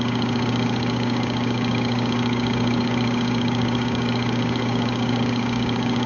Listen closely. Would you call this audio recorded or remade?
remade